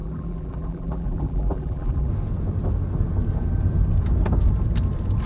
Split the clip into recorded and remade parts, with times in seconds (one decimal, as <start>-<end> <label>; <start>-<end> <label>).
0.0-2.1 remade; 2.1-5.3 recorded